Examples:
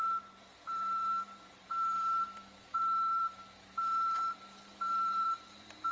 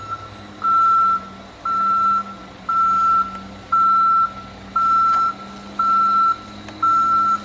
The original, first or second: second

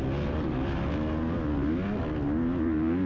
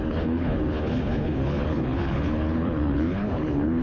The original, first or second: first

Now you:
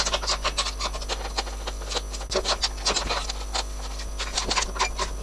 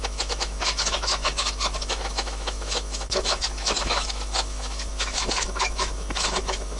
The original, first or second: first